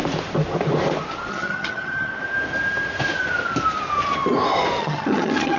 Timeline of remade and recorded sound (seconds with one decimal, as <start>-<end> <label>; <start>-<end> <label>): 0.0-1.3 recorded; 1.3-2.1 remade; 2.1-4.8 recorded; 4.8-5.6 remade